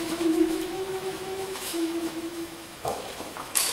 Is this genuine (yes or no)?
no